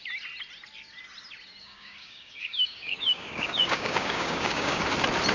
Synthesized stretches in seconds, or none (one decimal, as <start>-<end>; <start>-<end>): 1.6-4.8